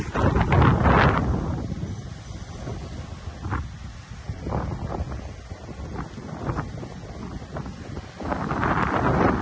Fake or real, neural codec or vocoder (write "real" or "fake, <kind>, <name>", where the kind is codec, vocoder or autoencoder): real